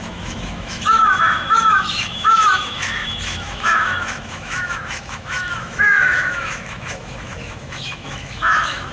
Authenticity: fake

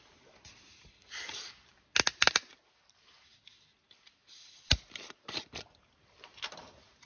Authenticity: real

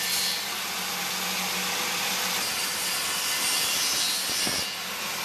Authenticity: real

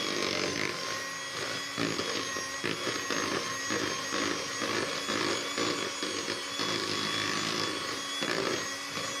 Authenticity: real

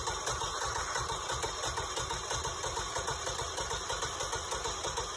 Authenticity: real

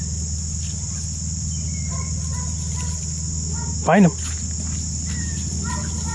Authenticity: real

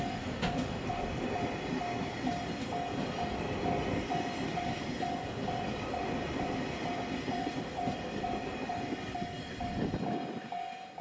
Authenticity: real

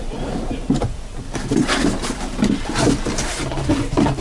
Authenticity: fake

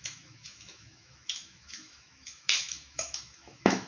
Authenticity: fake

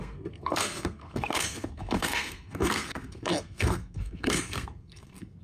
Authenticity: fake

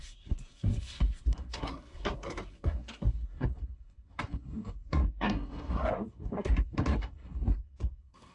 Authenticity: fake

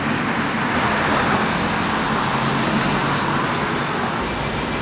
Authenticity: real